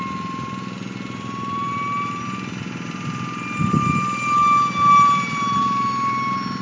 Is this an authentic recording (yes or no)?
yes